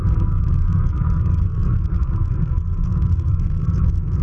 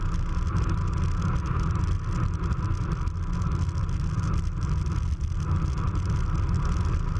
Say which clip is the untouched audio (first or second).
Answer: second